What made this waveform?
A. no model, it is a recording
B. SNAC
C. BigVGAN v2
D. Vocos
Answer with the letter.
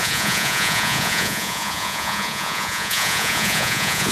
D